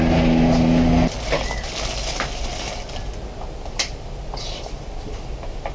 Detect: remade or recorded recorded